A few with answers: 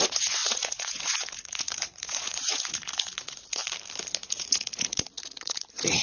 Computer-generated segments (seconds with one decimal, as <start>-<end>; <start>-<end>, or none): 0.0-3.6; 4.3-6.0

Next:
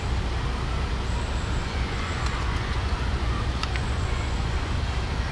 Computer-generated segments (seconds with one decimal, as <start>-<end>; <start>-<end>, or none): 1.6-4.8

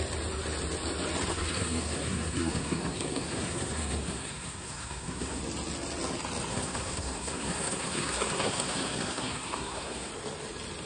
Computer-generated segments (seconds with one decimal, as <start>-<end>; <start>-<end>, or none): 1.3-5.4; 6.5-10.1